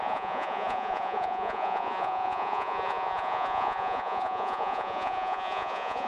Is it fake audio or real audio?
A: fake